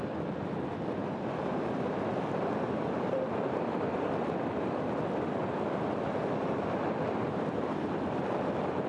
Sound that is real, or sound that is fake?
fake